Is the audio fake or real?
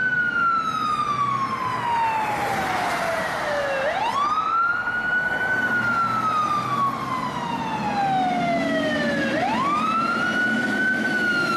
real